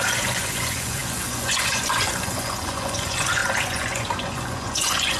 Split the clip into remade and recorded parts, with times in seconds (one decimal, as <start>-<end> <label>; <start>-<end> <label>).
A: 0.0-5.2 remade